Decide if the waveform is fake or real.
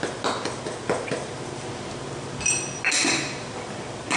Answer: real